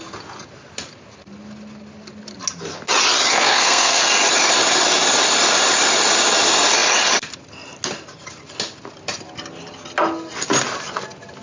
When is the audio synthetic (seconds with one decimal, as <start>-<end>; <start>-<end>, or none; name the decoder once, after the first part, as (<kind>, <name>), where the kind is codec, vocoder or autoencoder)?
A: 3.3-4.0 (codec, SNAC)